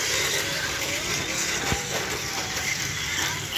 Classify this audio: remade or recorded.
remade